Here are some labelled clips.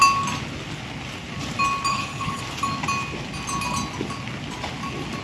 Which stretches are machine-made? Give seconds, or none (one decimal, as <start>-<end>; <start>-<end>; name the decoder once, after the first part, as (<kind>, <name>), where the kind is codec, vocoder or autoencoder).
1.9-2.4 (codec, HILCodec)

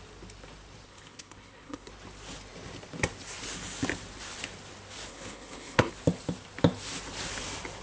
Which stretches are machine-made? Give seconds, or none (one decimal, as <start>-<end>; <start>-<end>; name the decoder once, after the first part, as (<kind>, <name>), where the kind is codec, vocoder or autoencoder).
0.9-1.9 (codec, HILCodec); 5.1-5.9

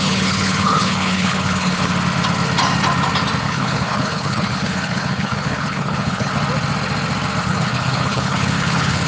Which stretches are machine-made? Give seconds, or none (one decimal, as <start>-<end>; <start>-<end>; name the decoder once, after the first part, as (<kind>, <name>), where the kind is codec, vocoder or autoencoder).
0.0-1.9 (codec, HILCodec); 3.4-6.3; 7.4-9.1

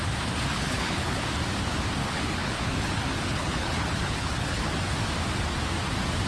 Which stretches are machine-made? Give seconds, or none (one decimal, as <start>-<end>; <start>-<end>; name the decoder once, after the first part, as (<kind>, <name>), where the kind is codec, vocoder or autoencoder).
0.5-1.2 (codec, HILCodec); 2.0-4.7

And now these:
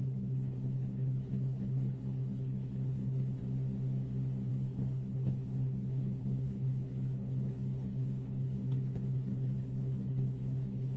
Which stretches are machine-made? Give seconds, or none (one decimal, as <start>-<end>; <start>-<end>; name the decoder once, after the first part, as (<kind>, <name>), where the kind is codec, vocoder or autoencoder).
0.0-3.4 (codec, HILCodec); 4.5-11.0

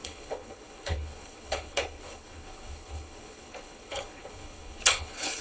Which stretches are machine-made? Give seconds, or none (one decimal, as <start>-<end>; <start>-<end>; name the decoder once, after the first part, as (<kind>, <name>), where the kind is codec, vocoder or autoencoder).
0.0-5.4 (codec, HILCodec)

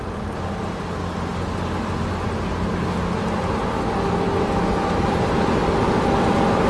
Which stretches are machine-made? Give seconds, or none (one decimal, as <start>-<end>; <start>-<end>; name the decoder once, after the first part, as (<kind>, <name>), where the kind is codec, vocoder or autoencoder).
none

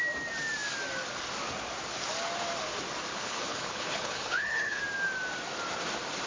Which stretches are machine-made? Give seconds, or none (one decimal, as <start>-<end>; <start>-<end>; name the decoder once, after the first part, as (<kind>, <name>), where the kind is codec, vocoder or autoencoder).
3.1-4.8 (codec, HILCodec)